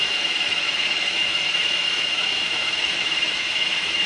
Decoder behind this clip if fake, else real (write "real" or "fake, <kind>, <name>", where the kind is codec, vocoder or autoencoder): fake, autoencoder, DAC-VAE